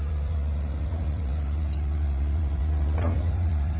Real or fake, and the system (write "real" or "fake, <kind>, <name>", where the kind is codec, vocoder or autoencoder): fake, vocoder, Vocos